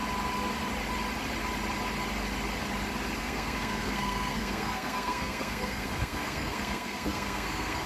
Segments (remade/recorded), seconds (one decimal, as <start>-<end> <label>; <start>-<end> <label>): 0.0-3.2 recorded; 3.2-7.9 remade